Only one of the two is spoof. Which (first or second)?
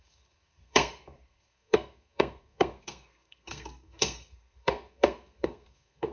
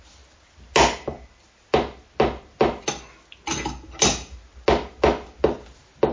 first